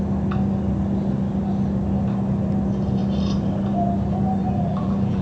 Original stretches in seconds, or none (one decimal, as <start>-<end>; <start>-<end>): 0.0-4.4